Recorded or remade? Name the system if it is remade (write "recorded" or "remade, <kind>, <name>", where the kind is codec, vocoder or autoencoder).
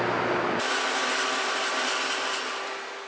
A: recorded